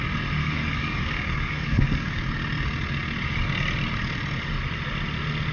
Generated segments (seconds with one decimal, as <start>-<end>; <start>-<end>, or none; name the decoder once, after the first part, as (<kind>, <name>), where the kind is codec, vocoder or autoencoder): 0.4-2.2 (codec, DAC)